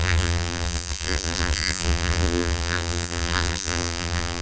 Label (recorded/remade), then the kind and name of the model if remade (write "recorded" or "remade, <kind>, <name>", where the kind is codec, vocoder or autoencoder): remade, vocoder, BigVGAN v2